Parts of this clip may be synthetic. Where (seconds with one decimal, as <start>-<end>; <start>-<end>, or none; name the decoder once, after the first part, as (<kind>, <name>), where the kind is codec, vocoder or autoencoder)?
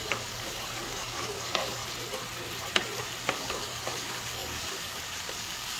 0.0-1.8 (codec, DAC); 3.3-5.8